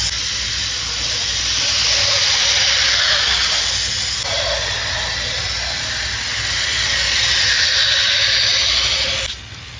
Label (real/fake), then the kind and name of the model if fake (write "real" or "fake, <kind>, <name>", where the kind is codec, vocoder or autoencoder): real